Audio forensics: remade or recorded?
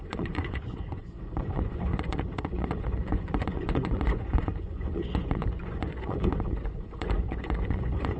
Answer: remade